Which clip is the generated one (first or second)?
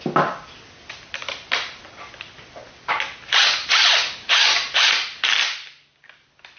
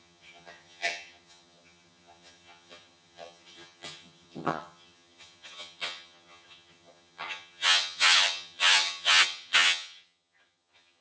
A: second